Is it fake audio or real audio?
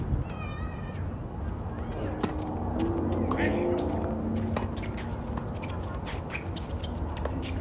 real